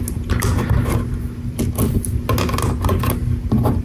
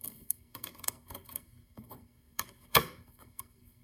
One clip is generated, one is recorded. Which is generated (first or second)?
second